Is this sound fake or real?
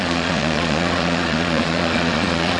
fake